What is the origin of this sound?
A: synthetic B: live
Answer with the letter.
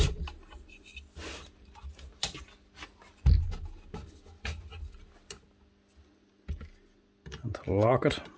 B